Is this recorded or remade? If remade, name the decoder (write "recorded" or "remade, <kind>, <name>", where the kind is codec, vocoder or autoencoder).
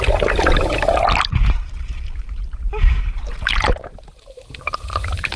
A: remade, vocoder, BigVGAN v2